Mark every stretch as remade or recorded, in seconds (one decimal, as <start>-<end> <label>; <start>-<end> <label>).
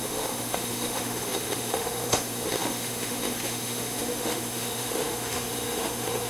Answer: 0.0-6.3 remade